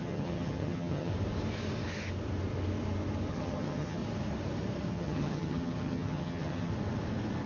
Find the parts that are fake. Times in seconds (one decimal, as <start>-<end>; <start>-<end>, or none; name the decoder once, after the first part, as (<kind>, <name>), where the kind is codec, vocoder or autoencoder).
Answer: 0.0-1.1 (vocoder, HiFi-GAN); 3.3-4.0; 4.9-6.7